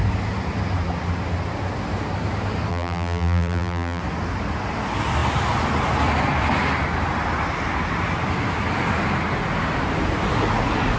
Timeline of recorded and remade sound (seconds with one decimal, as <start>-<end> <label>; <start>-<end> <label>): 0.0-2.7 recorded; 2.7-4.0 remade; 4.0-11.0 recorded